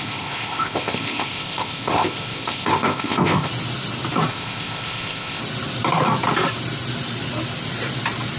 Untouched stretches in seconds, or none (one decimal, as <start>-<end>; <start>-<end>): 3.5-4.3; 5.4-8.4